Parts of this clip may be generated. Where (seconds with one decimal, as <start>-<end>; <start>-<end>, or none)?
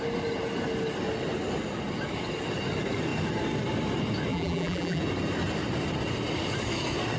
4.3-5.0